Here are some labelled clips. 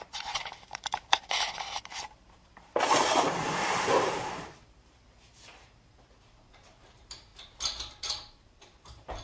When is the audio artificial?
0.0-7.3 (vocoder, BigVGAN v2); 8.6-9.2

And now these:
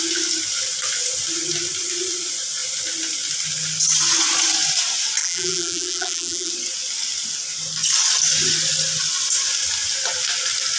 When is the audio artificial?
5.2-6.5 (vocoder, BigVGAN v2)

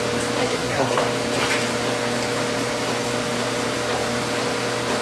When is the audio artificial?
0.4-1.0 (codec, SNAC)

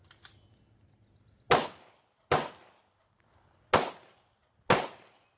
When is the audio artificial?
none